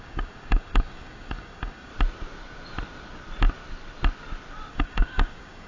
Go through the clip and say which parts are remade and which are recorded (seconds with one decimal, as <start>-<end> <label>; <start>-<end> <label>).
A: 0.0-1.9 remade; 1.9-4.7 recorded; 4.7-5.7 remade